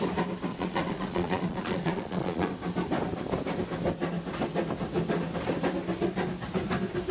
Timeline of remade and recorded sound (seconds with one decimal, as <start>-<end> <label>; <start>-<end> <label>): 0.0-0.5 recorded; 0.5-2.5 remade; 2.5-7.1 recorded